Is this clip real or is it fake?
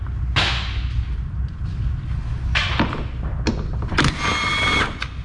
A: real